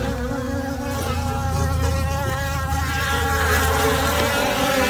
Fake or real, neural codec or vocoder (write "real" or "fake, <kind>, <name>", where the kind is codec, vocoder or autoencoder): real